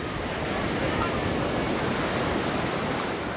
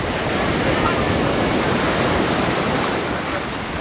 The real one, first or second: first